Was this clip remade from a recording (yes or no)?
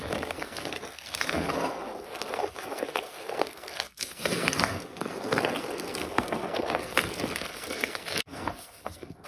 yes